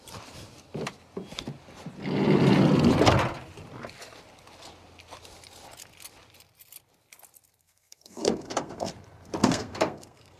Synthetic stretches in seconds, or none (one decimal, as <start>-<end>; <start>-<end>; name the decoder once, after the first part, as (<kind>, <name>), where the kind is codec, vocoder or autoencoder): 7.6-8.9 (codec, SNAC); 9.4-10.4

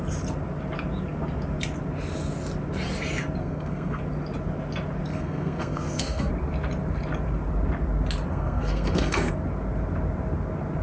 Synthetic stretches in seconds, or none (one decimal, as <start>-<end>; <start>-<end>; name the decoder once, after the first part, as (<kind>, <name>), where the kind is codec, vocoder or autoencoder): 3.4-4.0 (codec, SNAC); 5.1-6.3; 8.3-9.3

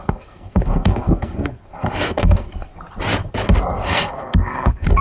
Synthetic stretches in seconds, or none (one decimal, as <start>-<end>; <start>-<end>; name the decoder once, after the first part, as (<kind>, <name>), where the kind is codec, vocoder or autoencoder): 0.0-2.7 (codec, SNAC); 3.8-5.0

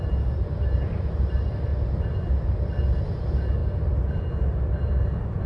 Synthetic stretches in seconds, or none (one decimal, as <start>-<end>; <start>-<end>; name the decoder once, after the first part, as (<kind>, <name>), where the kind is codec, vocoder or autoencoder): none

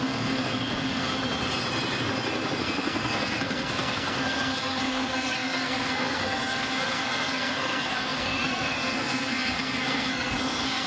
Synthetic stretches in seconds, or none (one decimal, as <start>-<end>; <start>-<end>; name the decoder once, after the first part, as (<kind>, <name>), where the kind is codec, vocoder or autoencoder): 0.0-1.2 (codec, SNAC); 2.6-10.9

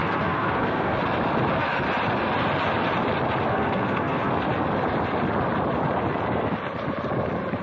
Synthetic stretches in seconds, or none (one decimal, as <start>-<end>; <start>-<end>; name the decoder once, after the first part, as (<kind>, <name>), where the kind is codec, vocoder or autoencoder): 0.0-1.0 (codec, SNAC); 3.5-4.3

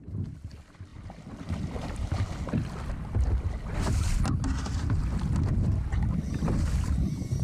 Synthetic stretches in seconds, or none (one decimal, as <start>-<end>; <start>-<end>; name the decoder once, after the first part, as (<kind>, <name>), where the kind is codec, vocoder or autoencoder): none

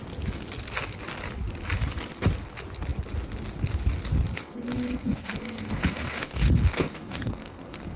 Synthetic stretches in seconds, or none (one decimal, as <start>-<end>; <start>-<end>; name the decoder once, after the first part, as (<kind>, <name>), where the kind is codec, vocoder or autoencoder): 4.3-8.0 (codec, SNAC)